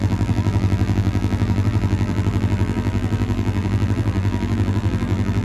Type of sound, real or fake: fake